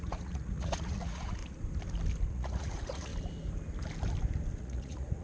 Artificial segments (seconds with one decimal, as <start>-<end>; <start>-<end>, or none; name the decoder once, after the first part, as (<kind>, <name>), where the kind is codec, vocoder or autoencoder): 0.0-1.4 (vocoder, Vocos); 2.3-3.1; 4.6-5.2